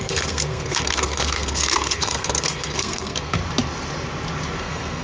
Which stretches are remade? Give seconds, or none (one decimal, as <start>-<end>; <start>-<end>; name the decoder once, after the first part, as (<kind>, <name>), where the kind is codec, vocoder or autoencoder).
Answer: 0.0-3.4 (codec, SNAC); 4.6-5.0